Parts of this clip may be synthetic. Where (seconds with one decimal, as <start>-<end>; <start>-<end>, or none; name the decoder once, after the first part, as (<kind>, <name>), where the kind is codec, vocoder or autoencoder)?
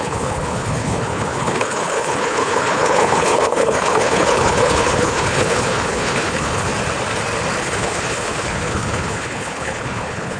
0.0-6.7 (codec, HILCodec); 7.6-10.4